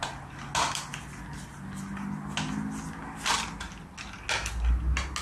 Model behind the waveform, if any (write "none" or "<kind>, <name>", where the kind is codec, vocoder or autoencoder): none